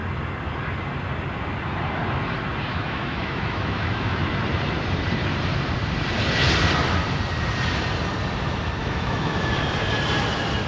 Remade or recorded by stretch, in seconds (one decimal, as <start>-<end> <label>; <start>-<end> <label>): 0.0-2.7 recorded; 2.7-4.2 remade; 4.2-8.8 recorded; 8.8-9.6 remade; 9.6-10.7 recorded